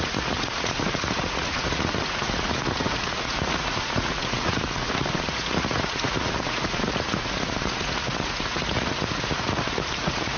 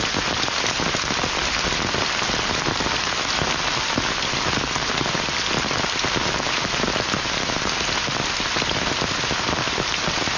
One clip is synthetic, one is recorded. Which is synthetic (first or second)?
first